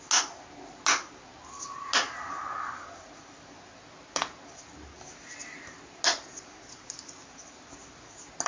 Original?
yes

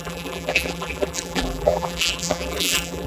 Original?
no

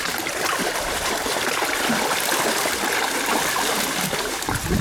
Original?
yes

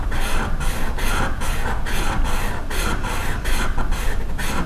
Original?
yes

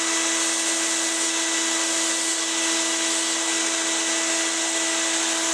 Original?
yes